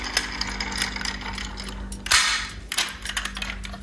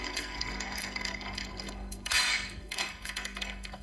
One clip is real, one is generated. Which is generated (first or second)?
second